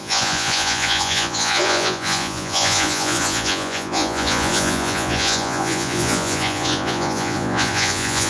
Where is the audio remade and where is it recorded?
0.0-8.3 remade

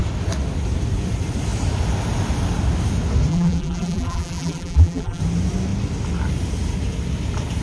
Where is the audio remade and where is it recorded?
0.0-3.3 recorded; 3.3-5.2 remade; 5.2-7.6 recorded